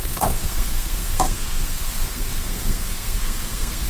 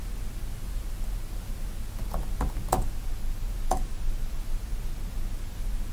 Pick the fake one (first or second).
first